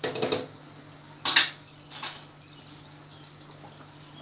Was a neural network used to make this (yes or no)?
no